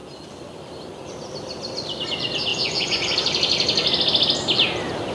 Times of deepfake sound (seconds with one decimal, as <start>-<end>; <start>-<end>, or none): 2.5-3.1